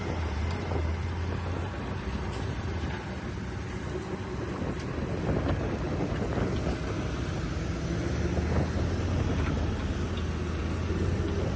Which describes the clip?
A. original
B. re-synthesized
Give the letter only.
A